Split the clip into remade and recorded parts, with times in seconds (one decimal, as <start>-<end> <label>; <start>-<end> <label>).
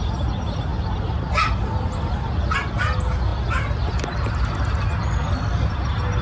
0.0-6.2 recorded